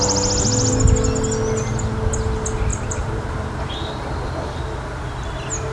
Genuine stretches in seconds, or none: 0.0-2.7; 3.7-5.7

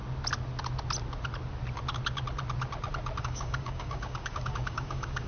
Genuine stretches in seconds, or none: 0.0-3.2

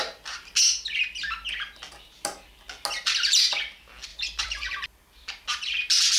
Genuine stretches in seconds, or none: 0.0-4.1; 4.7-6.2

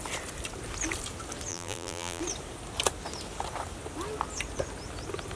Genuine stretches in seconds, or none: 0.0-1.5; 2.2-5.4

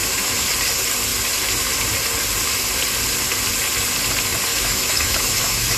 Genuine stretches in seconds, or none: 0.5-4.5

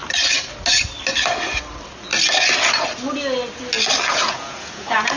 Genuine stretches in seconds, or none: 0.0-4.1